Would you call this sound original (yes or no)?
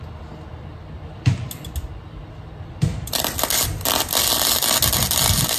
yes